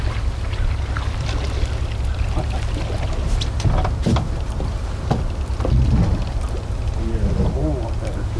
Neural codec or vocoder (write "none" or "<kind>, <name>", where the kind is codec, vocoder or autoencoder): none